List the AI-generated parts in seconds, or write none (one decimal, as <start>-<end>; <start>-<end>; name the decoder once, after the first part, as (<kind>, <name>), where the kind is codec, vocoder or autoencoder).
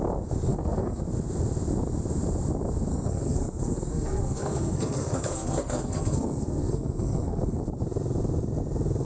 0.5-1.0 (codec, SNAC); 2.9-7.6